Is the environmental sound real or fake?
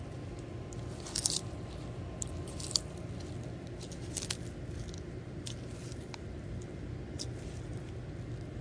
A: real